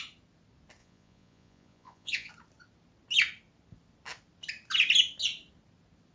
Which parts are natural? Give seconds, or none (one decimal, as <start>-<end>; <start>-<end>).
0.0-0.8; 2.3-6.1